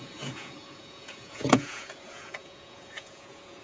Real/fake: fake